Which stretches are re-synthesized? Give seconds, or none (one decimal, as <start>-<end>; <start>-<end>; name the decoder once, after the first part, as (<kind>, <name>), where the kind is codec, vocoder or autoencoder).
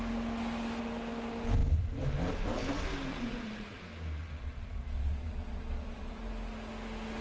3.1-3.8 (vocoder, Vocos); 4.2-6.2